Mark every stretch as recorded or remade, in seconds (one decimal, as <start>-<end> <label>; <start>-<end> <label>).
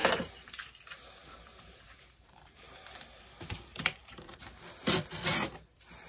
0.0-0.6 remade; 0.6-1.2 recorded; 1.2-3.2 remade; 3.2-3.7 recorded; 3.7-4.4 remade; 4.4-6.1 recorded